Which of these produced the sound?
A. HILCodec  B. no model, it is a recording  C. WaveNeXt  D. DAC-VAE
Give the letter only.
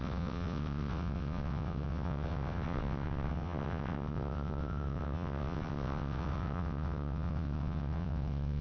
C